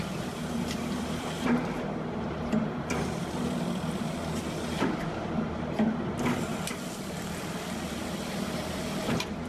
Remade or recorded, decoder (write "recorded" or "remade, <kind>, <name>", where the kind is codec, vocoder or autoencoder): remade, vocoder, BigVGAN v2